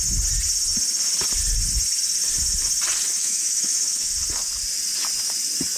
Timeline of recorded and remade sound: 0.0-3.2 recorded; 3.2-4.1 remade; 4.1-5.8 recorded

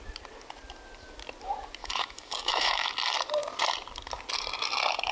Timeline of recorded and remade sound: 0.0-1.8 recorded; 1.8-2.9 remade; 2.9-5.1 recorded

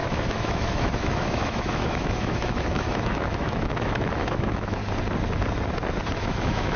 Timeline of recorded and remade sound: 0.0-4.8 remade; 4.8-6.2 recorded; 6.2-6.8 remade

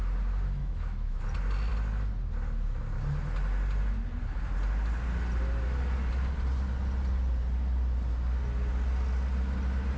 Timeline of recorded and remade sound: 0.0-0.6 recorded; 0.6-1.2 remade; 1.2-10.0 recorded